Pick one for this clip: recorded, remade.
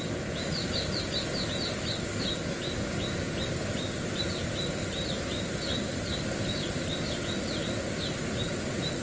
recorded